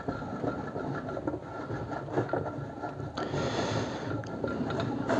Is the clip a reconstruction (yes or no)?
no